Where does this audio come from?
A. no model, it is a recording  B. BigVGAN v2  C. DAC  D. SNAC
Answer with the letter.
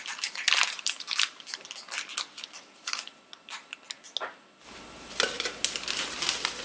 A